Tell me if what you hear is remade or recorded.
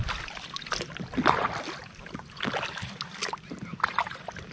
recorded